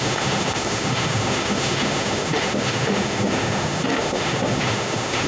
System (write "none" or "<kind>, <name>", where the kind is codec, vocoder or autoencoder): autoencoder, DAC-VAE